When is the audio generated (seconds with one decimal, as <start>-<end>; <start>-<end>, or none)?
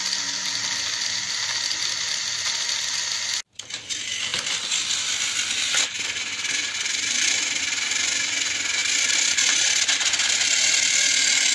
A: none